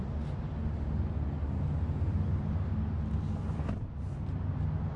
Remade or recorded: recorded